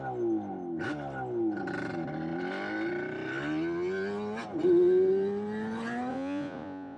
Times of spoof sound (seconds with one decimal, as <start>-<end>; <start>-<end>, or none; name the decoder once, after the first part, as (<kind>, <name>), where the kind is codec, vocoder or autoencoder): 6.1-7.0 (vocoder, Vocos)